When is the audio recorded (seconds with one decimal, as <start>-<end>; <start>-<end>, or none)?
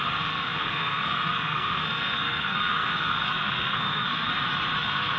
4.3-4.8